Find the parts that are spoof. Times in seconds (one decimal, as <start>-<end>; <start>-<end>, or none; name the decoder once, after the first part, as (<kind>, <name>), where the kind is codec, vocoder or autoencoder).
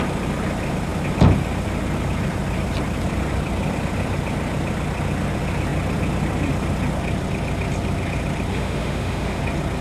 8.5-9.4 (autoencoder, DAC-VAE)